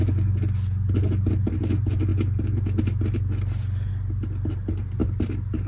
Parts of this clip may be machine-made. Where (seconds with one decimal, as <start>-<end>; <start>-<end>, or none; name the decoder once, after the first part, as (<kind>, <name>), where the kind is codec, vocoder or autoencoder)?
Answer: none